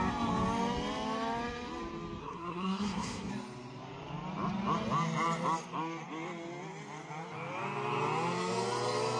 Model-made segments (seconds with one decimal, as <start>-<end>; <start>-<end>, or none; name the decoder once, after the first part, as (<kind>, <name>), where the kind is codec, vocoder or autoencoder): 2.2-3.3 (codec, SNAC)